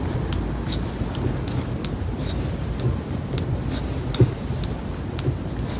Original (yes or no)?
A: yes